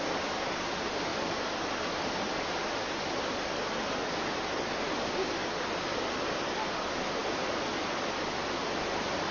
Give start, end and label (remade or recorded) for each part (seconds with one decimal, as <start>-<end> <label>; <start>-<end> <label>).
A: 0.0-9.3 recorded